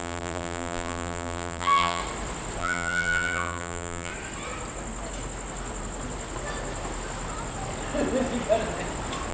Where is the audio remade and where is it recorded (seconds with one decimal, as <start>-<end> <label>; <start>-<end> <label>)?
0.0-2.0 remade; 2.0-2.6 recorded; 2.6-4.1 remade; 4.1-9.3 recorded